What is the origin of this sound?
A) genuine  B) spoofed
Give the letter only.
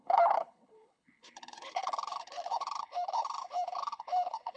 B